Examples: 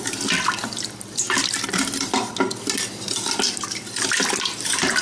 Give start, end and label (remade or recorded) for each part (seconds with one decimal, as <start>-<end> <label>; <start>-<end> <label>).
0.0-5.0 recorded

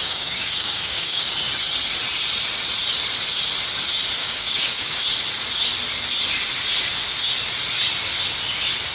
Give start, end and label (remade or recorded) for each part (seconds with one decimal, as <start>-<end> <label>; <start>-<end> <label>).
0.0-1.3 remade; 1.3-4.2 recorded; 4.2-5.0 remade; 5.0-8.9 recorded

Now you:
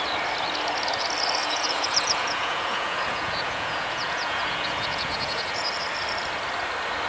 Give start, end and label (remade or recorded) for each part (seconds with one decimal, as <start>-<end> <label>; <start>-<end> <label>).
0.0-1.4 recorded; 1.4-5.7 remade; 5.7-7.1 recorded

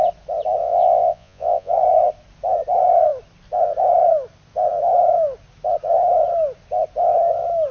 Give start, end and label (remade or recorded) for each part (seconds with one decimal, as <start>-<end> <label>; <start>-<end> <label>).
0.0-0.6 recorded; 0.6-1.7 remade; 1.7-7.7 recorded